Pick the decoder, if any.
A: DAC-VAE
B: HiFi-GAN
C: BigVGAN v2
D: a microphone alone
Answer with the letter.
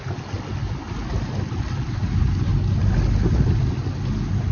D